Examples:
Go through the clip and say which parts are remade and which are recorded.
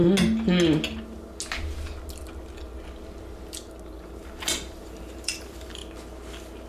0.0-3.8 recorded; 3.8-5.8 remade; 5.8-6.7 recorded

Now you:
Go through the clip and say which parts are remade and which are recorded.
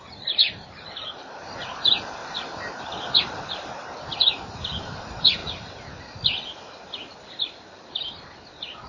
0.0-2.2 remade; 2.2-3.2 recorded; 3.2-5.4 remade; 5.4-6.7 recorded; 6.7-8.9 remade